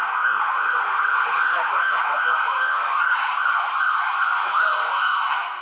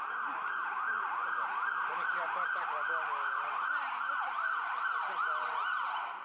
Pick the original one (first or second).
second